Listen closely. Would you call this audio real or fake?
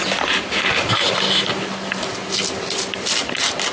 real